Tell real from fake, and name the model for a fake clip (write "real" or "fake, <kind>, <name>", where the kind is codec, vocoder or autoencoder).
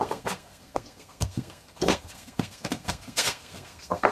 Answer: fake, codec, SNAC